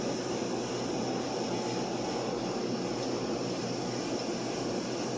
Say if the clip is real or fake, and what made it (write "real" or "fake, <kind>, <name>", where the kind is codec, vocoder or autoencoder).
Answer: real